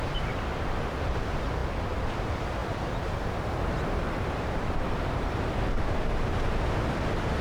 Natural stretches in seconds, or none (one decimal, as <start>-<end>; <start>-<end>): 0.0-2.6; 4.0-7.4